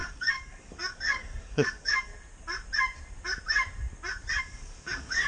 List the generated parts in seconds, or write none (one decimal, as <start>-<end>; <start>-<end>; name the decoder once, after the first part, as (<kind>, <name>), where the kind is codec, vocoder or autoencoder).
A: 0.0-2.1 (codec, DAC); 4.4-5.3